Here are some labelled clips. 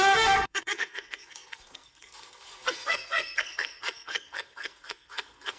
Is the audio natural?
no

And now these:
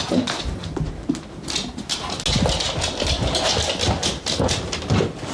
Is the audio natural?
yes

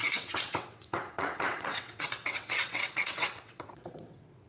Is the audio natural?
no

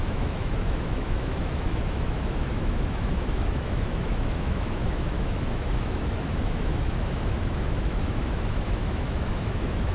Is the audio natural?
no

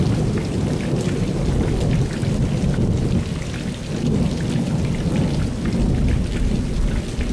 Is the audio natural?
yes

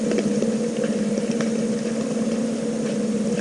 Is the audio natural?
yes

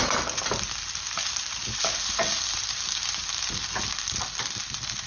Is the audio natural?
yes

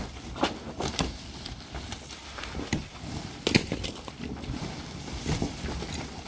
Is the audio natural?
yes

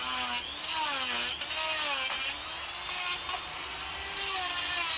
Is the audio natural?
yes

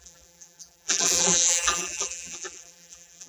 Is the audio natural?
no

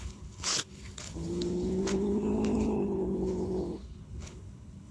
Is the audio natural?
no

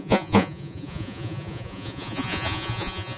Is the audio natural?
no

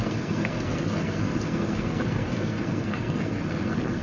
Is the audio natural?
no